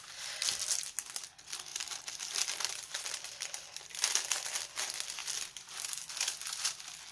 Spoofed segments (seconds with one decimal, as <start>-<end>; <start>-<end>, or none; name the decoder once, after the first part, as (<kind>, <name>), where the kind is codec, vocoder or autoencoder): 1.7-3.8 (vocoder, BigVGAN v2); 5.2-6.1